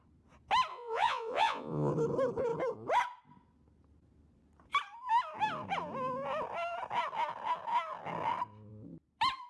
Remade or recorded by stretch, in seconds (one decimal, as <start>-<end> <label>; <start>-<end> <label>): 0.0-0.7 recorded; 0.7-1.9 remade; 1.9-9.5 recorded